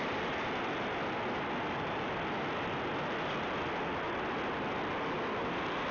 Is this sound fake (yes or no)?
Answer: no